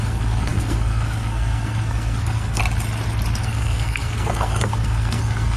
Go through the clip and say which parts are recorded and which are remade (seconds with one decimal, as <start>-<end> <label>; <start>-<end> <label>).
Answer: 0.0-2.6 remade; 2.6-3.4 recorded; 3.4-5.6 remade